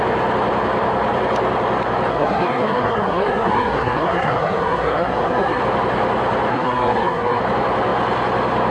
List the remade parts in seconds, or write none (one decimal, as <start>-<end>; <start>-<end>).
2.1-5.6; 6.5-7.4